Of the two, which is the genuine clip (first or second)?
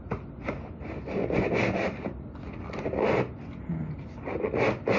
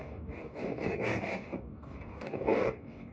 first